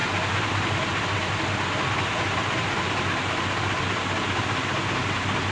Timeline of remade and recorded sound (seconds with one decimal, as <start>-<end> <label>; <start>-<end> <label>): 0.0-5.5 recorded